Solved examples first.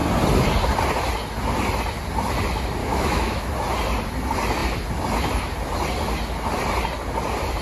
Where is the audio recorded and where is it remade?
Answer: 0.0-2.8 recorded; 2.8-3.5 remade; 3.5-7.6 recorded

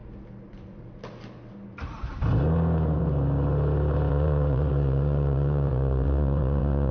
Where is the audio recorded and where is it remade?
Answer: 0.0-4.1 recorded; 4.1-6.9 remade

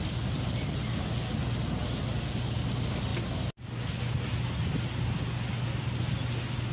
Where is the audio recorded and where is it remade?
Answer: 0.0-6.7 recorded

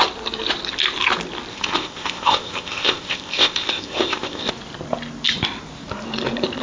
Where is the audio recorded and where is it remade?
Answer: 0.0-1.5 recorded; 1.5-4.5 remade; 4.5-6.6 recorded

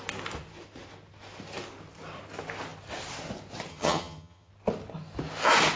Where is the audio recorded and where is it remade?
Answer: 0.0-3.7 recorded; 3.7-4.5 remade; 4.5-5.8 recorded

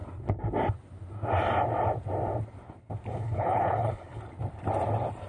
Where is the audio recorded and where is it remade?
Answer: 0.0-3.1 recorded; 3.1-4.2 remade; 4.2-5.3 recorded

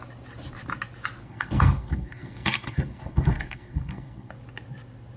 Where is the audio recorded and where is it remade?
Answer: 0.0-1.2 recorded; 1.2-4.3 remade; 4.3-5.2 recorded

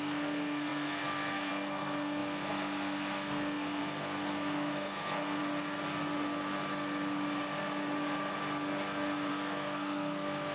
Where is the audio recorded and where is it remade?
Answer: 0.0-5.4 remade; 5.4-9.3 recorded; 9.3-10.5 remade